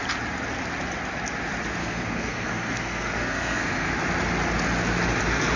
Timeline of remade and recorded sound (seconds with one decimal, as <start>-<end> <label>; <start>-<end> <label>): 0.0-1.8 recorded; 1.8-3.9 remade; 3.9-5.6 recorded